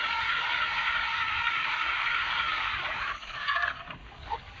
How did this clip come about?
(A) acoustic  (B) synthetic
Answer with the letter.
B